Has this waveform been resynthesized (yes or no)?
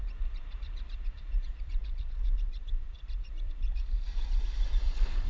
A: yes